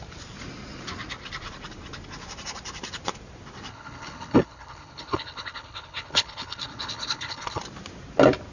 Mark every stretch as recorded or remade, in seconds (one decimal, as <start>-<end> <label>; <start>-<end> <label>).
0.0-3.7 recorded; 3.7-7.6 remade; 7.6-8.5 recorded